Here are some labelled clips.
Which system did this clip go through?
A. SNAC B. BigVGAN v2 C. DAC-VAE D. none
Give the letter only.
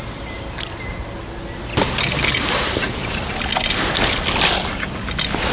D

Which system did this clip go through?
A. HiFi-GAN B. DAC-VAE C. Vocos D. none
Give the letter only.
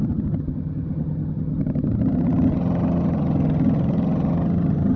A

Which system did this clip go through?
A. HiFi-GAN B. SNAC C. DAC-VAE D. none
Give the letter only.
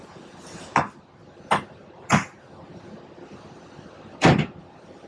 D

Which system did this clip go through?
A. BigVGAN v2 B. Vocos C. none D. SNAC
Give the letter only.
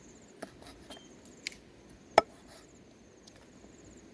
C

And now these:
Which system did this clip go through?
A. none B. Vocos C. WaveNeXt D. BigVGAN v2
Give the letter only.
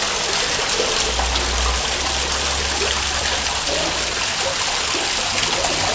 A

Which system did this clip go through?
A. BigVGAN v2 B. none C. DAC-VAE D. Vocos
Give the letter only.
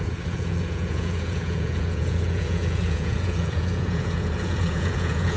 D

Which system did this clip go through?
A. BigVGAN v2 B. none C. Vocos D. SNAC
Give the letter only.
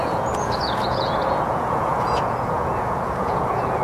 C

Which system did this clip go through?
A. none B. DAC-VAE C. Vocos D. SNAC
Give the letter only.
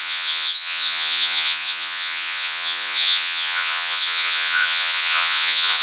C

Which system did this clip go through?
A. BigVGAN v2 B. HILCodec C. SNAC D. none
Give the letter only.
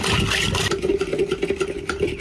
D